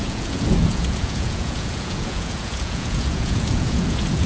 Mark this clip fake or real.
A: fake